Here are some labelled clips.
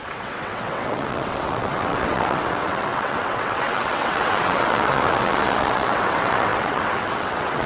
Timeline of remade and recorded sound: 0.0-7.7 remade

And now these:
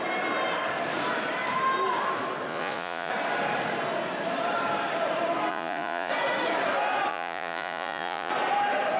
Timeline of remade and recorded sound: 0.0-2.5 recorded; 2.5-3.1 remade; 3.1-5.5 recorded; 5.5-6.1 remade; 6.1-7.1 recorded; 7.1-8.3 remade; 8.3-9.0 recorded

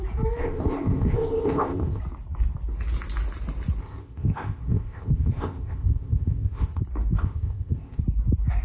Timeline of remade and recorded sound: 0.0-0.4 recorded; 0.4-2.0 remade; 2.0-3.8 recorded; 3.8-6.8 remade; 6.8-7.2 recorded; 7.2-8.0 remade; 8.0-8.6 recorded

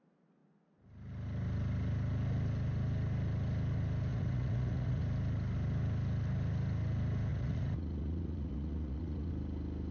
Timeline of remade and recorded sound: 0.0-4.1 recorded; 4.1-5.0 remade; 5.0-7.3 recorded; 7.3-9.3 remade; 9.3-9.9 recorded

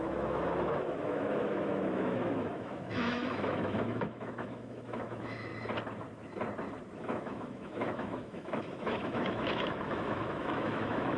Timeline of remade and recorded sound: 0.0-5.5 remade; 5.5-7.0 recorded; 7.0-11.2 remade

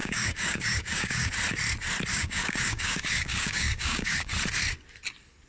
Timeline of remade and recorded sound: 0.0-1.3 remade; 1.3-2.1 recorded; 2.1-4.3 remade; 4.3-5.5 recorded